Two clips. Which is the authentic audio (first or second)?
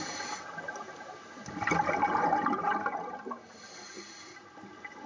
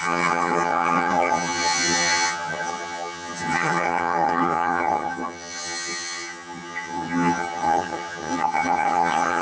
first